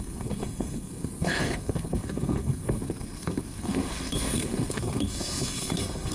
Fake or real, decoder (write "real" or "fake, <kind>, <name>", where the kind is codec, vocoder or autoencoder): fake, codec, SNAC